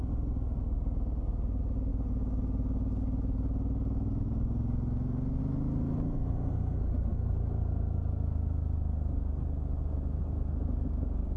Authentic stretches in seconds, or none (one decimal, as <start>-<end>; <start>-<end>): 0.0-11.4